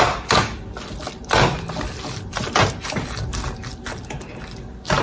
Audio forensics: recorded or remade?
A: recorded